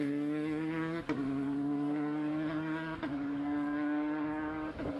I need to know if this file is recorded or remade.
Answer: remade